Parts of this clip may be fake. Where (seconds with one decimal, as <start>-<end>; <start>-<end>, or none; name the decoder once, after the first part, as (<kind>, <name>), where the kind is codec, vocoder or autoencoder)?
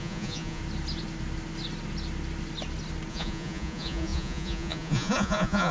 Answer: 0.0-0.6 (vocoder, Vocos); 3.1-5.7